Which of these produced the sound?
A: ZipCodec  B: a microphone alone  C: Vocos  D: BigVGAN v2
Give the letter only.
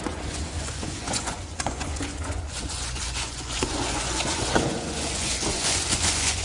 C